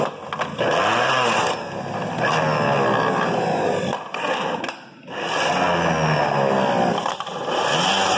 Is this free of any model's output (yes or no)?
yes